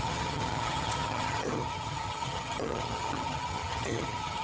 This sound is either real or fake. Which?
fake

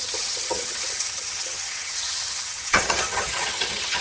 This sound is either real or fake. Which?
fake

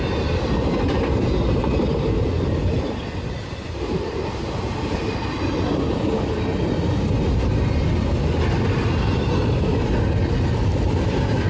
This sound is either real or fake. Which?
real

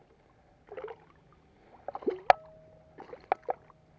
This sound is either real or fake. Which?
real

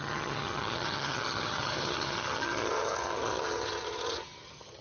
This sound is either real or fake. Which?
fake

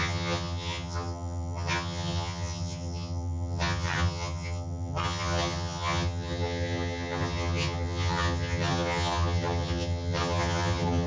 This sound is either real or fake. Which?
fake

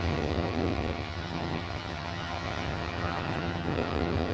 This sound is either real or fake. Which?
fake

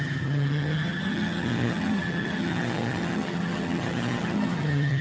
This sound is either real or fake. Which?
fake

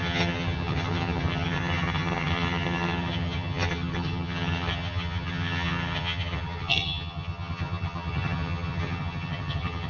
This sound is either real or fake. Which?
fake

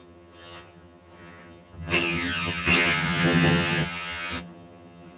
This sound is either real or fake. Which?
fake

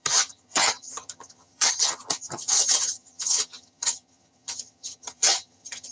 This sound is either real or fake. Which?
fake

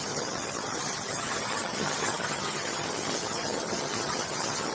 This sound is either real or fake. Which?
fake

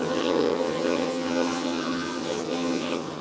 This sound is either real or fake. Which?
fake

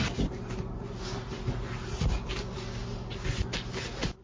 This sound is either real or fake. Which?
real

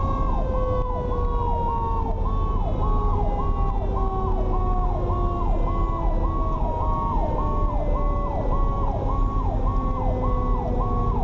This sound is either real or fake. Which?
real